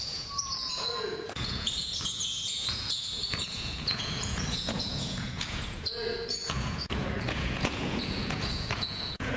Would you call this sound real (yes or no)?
no